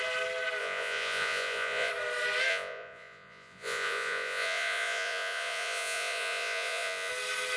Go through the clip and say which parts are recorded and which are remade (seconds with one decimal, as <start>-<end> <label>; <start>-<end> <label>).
0.0-0.6 recorded; 0.6-1.9 remade; 1.9-2.5 recorded; 2.5-7.1 remade; 7.1-7.6 recorded

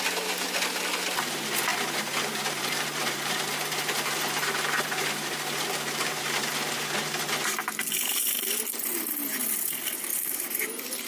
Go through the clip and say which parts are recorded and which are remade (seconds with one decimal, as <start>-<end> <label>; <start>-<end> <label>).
0.0-1.7 recorded; 1.7-6.6 remade; 6.6-11.1 recorded